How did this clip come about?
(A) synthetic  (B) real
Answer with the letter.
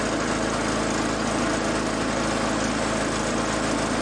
B